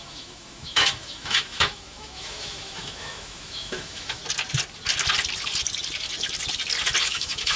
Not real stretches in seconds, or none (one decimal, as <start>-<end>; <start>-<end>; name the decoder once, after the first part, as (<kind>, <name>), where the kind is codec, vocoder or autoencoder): 0.0-4.2 (autoencoder, DAC-VAE); 7.0-7.6